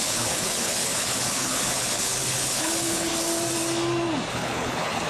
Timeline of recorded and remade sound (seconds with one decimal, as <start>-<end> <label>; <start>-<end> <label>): 0.0-3.1 remade; 3.1-4.3 recorded; 4.3-5.1 remade